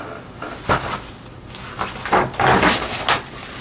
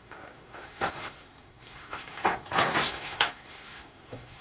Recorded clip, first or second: first